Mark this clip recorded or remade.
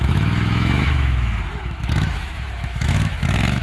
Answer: remade